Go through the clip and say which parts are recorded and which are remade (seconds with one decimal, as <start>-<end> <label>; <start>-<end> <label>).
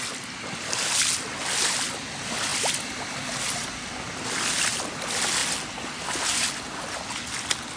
0.0-7.8 recorded